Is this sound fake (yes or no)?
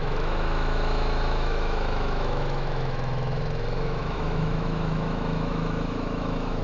yes